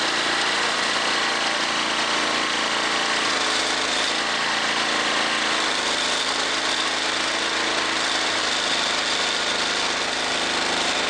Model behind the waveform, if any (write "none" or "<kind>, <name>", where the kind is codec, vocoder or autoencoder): none